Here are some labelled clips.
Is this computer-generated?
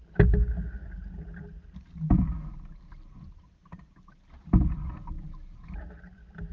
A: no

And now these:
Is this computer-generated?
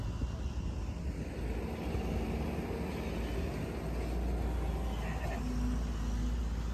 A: no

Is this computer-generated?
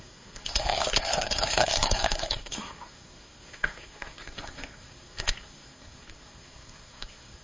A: yes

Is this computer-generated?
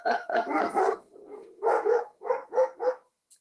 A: yes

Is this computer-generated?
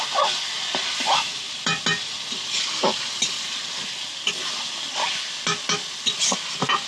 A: no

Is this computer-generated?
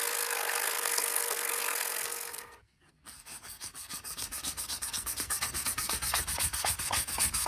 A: yes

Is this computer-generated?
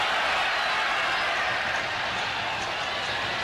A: no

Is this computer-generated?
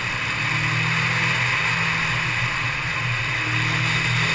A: no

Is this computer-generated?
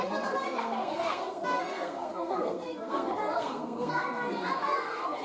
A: yes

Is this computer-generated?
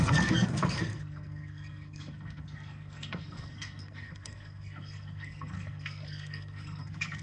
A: yes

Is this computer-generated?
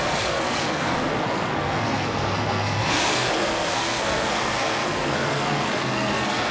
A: yes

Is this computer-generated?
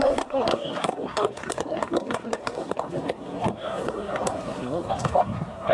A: yes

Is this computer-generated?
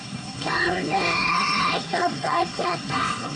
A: yes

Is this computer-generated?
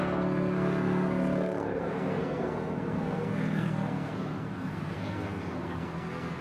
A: yes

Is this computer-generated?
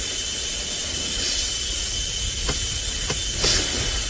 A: no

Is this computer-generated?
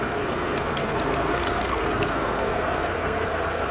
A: yes